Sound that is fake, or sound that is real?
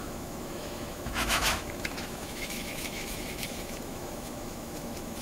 fake